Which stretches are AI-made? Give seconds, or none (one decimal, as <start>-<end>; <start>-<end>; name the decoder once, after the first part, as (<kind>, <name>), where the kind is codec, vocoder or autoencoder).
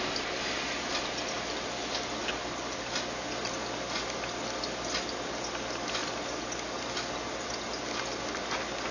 none